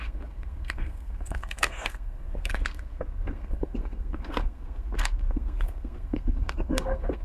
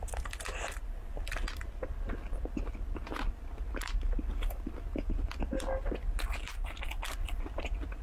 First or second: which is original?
second